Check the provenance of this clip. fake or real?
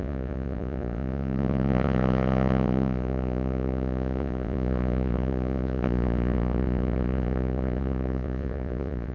fake